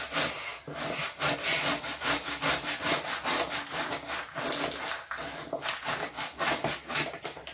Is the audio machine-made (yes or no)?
no